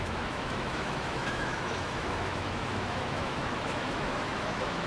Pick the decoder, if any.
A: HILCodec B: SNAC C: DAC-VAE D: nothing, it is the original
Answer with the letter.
C